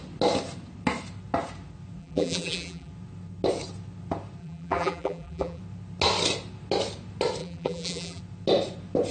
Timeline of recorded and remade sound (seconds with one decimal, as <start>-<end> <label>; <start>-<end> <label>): 0.0-2.0 recorded; 2.0-2.9 remade; 2.9-4.4 recorded; 4.4-5.6 remade; 5.6-7.4 recorded; 7.4-8.2 remade; 8.2-9.1 recorded